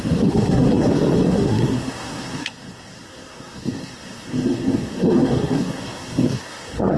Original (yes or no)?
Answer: no